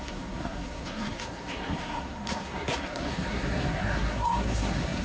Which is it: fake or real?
fake